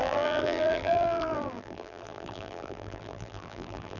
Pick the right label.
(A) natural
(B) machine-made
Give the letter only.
B